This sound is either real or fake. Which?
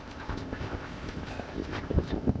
fake